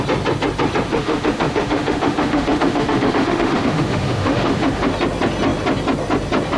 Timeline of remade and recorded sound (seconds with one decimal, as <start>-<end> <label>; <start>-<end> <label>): 0.0-0.9 recorded; 0.9-4.9 remade; 4.9-6.6 recorded